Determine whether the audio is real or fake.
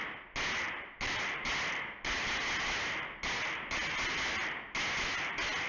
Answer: real